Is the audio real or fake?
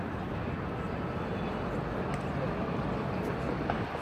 real